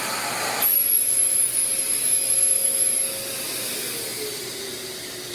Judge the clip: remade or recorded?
recorded